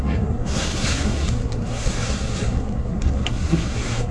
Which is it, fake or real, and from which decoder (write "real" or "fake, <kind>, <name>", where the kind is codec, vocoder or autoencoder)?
fake, codec, SNAC